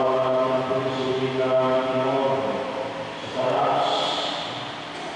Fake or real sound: real